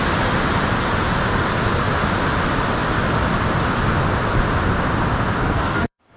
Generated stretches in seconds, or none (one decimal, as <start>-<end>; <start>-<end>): 5.4-6.2